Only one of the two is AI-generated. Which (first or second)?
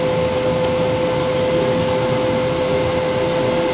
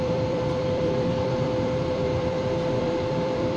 second